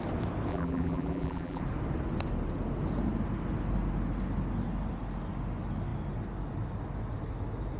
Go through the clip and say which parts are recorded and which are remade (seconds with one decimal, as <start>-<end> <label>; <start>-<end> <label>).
0.0-0.5 recorded; 0.5-1.6 remade; 1.6-7.8 recorded